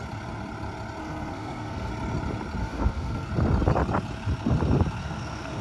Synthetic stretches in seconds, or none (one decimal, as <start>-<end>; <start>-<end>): 1.0-1.9; 2.6-3.3; 5.0-5.6

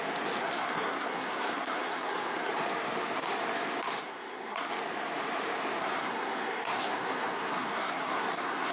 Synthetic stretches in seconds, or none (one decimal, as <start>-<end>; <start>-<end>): 0.4-2.5; 4.0-4.7; 5.8-8.7

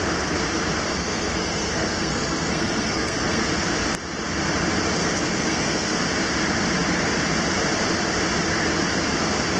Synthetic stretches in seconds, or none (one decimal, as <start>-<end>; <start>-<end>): 0.9-3.5; 5.0-6.0

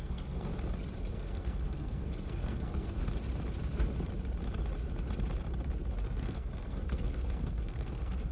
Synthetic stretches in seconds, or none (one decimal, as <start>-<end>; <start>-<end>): 0.0-0.5; 1.1-3.0; 6.0-8.3

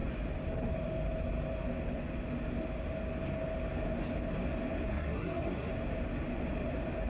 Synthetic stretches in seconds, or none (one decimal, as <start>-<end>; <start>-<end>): 4.9-5.7